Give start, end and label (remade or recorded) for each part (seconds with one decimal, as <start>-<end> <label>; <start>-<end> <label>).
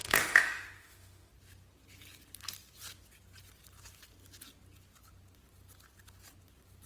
0.0-1.3 remade; 1.3-6.9 recorded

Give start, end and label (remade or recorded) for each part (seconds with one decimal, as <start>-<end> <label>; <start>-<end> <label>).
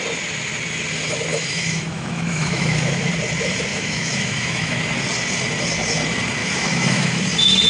0.0-1.3 recorded; 1.3-3.1 remade; 3.1-3.7 recorded; 3.7-4.8 remade; 4.8-6.4 recorded; 6.4-7.2 remade; 7.2-7.7 recorded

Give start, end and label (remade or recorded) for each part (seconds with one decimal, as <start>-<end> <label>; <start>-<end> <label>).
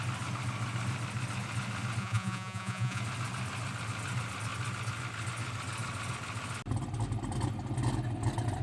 0.0-2.0 recorded; 2.0-3.0 remade; 3.0-8.6 recorded